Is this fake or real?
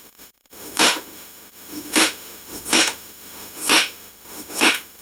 fake